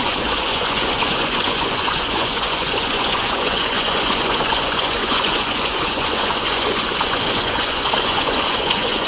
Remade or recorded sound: remade